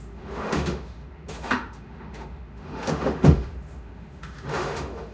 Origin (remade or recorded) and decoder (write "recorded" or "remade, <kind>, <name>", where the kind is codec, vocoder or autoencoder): remade, autoencoder, DAC-VAE